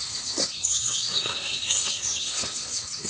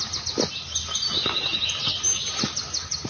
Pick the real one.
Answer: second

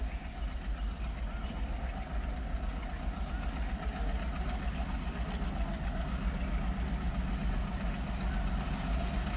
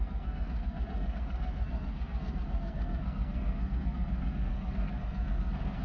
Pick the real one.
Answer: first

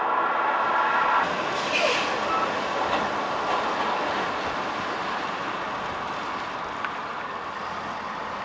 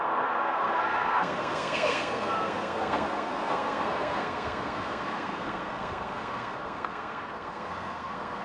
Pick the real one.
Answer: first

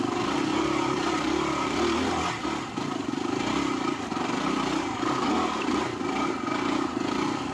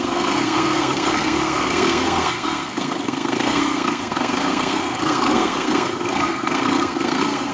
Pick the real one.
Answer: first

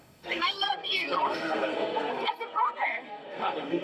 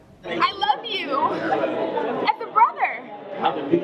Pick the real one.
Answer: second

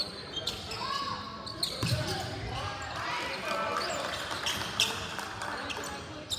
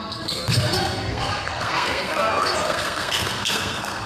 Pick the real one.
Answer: first